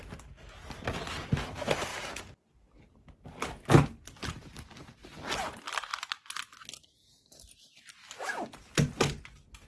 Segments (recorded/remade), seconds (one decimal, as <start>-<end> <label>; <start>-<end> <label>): 0.0-1.9 recorded; 1.9-4.5 remade; 4.5-9.7 recorded